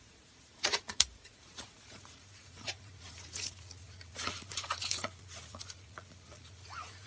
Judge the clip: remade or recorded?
remade